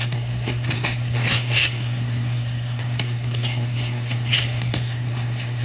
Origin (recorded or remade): remade